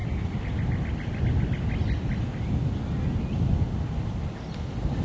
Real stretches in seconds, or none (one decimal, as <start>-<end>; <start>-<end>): 0.0-5.0